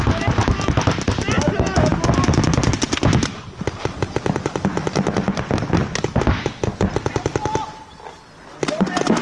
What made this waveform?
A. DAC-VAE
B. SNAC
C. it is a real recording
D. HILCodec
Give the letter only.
C